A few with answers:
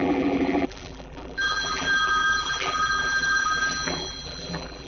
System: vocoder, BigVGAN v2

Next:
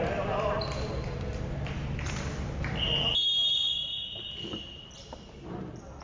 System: none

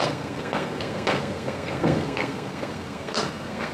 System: codec, SNAC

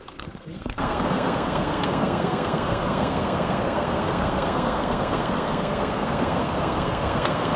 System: codec, SNAC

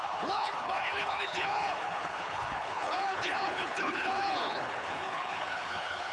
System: codec, HILCodec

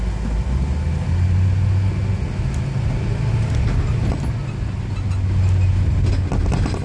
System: none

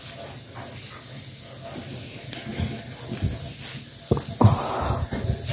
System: none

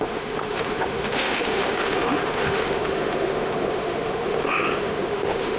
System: autoencoder, DAC-VAE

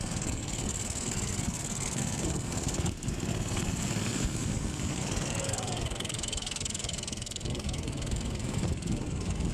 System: codec, SNAC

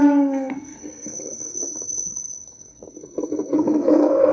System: codec, SNAC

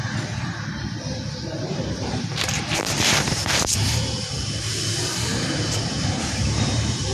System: vocoder, BigVGAN v2